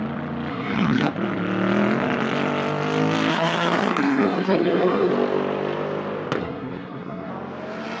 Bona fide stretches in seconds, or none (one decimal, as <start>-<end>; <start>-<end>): 0.0-0.5; 1.1-3.3; 5.1-6.4; 7.3-8.0